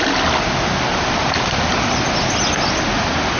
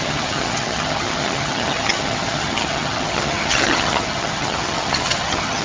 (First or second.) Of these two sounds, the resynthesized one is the second